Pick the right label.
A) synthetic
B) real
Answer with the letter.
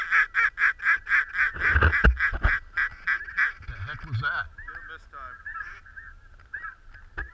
B